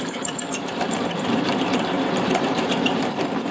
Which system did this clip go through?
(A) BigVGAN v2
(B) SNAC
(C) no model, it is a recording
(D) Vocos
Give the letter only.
A